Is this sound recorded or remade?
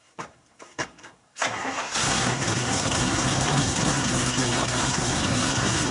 remade